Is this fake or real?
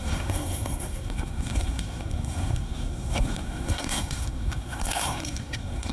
fake